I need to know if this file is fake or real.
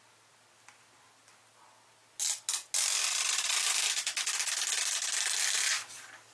real